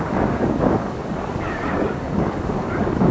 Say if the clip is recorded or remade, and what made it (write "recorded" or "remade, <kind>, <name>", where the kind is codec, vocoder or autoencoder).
remade, codec, DAC